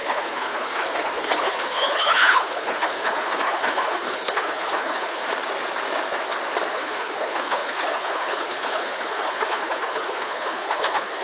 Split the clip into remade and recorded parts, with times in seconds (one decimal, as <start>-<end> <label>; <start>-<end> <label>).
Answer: 0.0-5.2 remade; 5.2-6.7 recorded; 6.7-11.2 remade